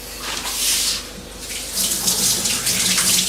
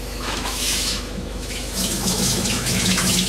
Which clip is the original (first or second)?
first